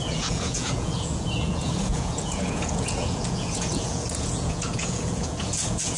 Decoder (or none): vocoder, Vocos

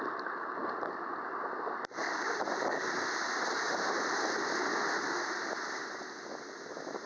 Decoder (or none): none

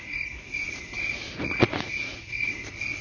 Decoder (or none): vocoder, Vocos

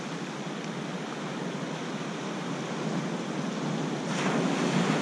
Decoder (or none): none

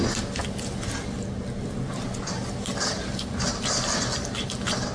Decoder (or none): none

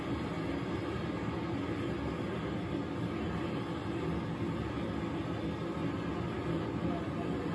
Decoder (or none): none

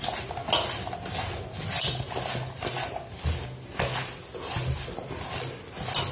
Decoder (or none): none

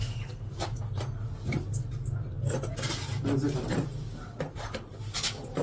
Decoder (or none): none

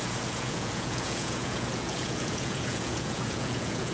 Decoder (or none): vocoder, Vocos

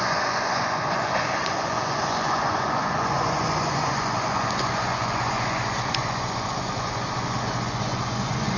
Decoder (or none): vocoder, Vocos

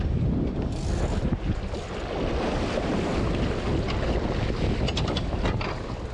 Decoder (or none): none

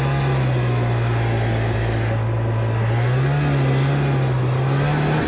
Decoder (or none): none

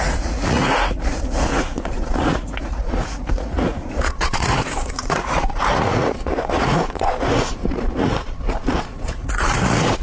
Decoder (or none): vocoder, Vocos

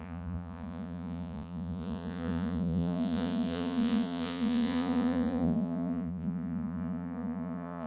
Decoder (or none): vocoder, Vocos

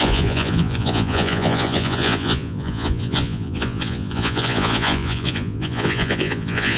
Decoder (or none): vocoder, Vocos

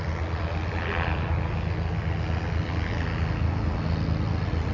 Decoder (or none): none